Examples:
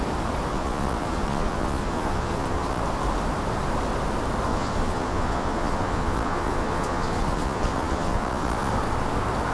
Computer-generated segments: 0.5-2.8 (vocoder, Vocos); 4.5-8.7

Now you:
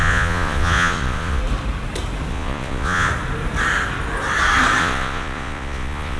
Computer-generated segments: 0.0-1.4 (vocoder, Vocos); 2.3-3.1; 4.8-6.2

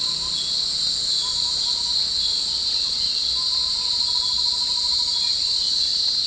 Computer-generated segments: none

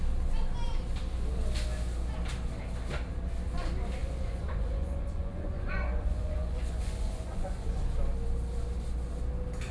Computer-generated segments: 4.0-7.9 (vocoder, Vocos)

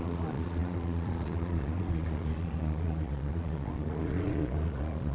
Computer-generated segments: 0.0-5.1 (vocoder, Vocos)